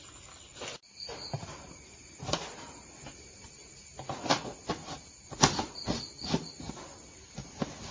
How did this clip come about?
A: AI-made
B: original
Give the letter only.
B